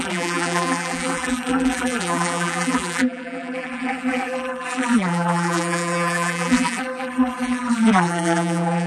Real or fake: fake